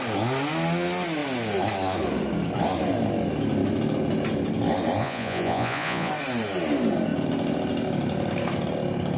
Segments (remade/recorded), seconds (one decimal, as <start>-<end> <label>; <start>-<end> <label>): 0.0-5.0 recorded; 5.0-6.1 remade; 6.1-9.2 recorded